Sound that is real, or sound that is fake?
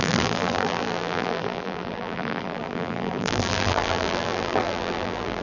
fake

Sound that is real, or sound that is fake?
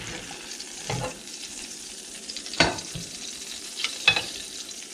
fake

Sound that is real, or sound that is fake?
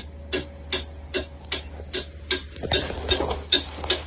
real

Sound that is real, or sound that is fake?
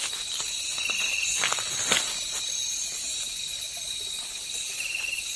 fake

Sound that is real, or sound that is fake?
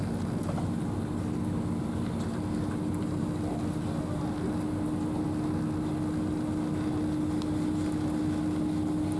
real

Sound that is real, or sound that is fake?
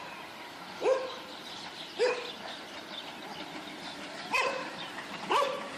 real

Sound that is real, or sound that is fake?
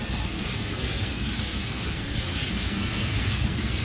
fake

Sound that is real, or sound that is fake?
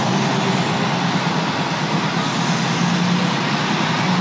real